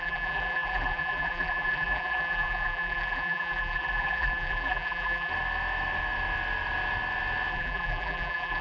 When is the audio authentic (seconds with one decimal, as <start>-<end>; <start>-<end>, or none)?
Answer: 5.3-7.5